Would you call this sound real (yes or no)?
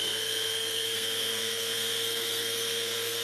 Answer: no